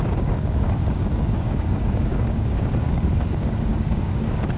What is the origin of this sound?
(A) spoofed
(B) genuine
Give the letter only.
A